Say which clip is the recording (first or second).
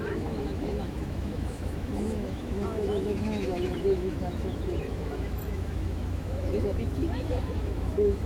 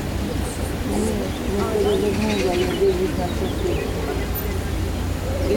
second